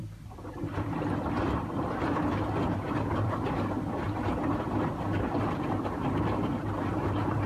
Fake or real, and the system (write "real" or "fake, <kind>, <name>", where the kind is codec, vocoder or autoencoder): fake, vocoder, BigVGAN v2